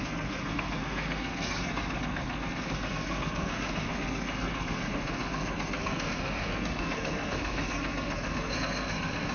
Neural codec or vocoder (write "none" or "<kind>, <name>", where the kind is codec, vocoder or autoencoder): codec, SNAC